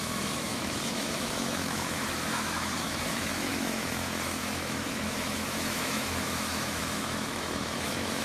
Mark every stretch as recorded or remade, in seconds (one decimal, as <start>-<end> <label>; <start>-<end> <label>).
0.0-8.2 remade